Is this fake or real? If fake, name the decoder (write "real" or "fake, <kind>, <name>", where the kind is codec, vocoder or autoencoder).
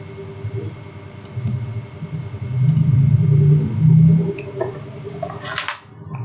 real